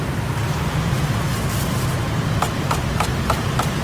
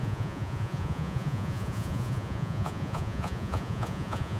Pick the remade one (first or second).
second